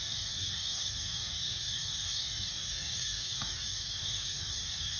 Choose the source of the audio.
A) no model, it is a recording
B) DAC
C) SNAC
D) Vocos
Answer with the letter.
B